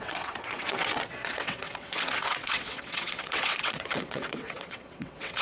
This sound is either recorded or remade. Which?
remade